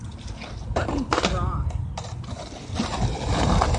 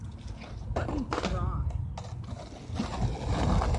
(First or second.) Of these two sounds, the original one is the second